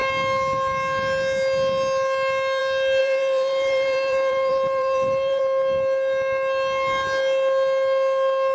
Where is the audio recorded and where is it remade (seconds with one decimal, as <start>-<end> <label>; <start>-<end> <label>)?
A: 0.0-3.0 recorded; 3.0-5.4 remade; 5.4-8.5 recorded